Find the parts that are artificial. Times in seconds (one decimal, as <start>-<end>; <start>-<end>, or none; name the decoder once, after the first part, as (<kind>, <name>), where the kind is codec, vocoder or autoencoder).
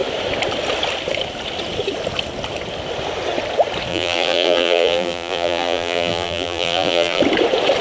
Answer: 3.9-7.2 (vocoder, BigVGAN v2)